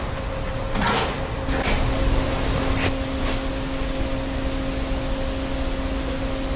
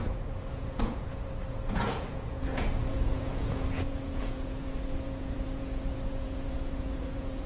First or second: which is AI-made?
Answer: second